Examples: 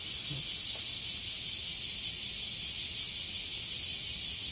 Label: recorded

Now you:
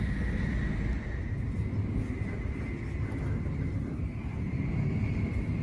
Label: recorded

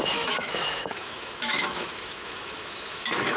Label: remade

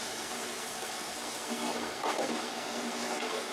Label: remade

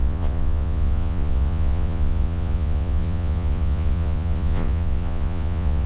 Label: remade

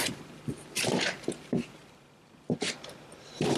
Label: remade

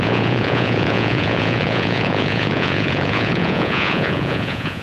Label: remade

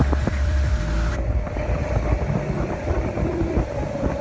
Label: remade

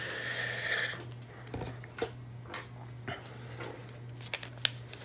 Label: recorded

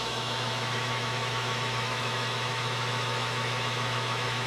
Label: remade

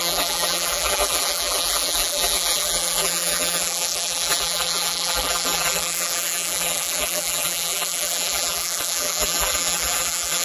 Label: remade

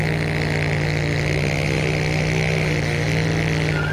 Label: recorded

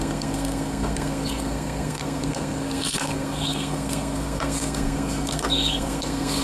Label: remade